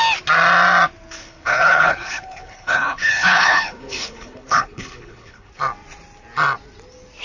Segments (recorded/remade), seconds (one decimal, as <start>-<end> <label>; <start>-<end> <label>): 0.0-1.2 recorded; 1.2-5.5 remade; 5.5-7.2 recorded